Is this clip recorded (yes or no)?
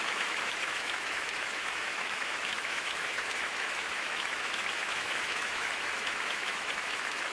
no